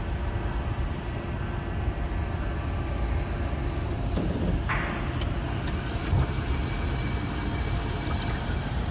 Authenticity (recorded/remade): recorded